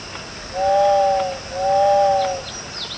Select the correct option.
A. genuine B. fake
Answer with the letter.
A